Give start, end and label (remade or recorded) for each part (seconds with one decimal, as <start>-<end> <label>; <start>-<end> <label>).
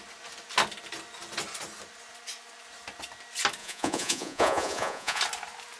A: 0.0-3.6 recorded; 3.6-5.2 remade; 5.2-5.8 recorded